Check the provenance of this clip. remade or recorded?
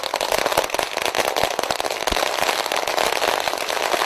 recorded